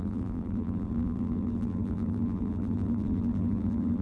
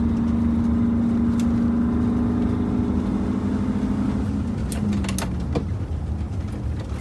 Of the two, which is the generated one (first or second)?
first